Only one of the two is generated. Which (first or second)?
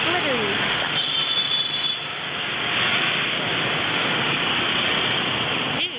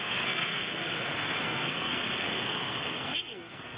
second